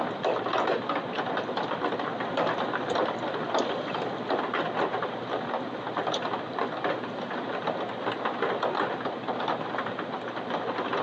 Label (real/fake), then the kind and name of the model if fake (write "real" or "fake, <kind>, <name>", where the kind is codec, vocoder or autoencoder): fake, vocoder, BigVGAN v2